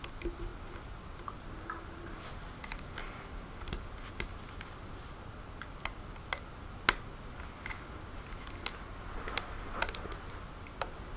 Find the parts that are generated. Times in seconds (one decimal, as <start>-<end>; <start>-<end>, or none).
4.8-5.7